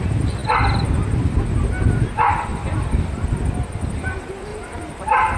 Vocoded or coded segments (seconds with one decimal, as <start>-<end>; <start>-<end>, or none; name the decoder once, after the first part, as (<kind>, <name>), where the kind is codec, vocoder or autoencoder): 4.5-5.4 (vocoder, BigVGAN v2)